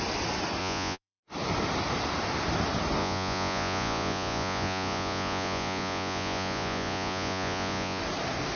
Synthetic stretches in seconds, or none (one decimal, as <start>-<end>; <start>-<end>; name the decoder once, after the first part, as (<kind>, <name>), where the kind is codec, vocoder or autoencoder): 0.6-1.2 (vocoder, Vocos); 3.0-8.0